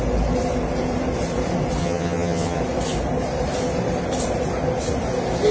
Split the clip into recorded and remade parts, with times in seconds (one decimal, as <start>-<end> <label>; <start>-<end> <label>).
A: 0.0-1.8 recorded; 1.8-2.6 remade; 2.6-5.5 recorded